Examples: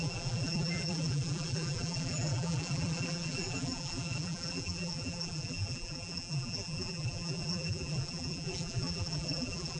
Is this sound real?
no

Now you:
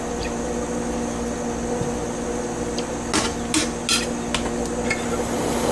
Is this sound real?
yes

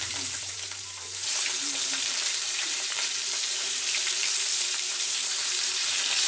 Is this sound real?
no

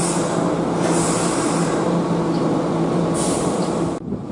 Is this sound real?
no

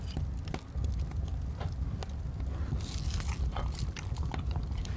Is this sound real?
yes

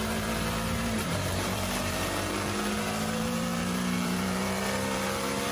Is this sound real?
no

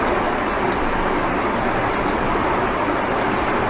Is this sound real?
yes